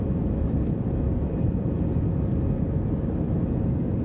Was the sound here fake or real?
real